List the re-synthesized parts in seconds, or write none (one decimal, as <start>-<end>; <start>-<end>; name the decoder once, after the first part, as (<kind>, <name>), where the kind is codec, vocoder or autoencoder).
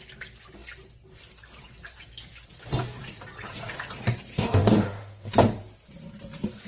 4.3-5.3 (autoencoder, DAC-VAE)